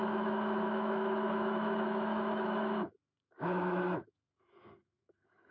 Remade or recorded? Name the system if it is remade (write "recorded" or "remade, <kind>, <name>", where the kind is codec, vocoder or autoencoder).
remade, autoencoder, DAC-VAE